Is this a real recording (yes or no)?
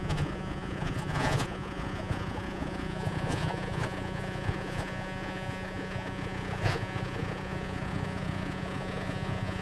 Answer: no